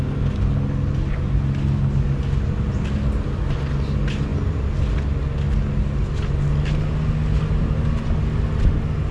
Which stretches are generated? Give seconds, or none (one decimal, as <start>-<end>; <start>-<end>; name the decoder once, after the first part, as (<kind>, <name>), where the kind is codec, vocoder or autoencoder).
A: none